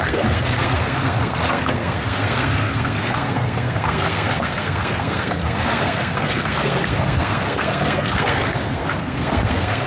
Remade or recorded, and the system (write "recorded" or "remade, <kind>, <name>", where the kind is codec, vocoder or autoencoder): remade, codec, SNAC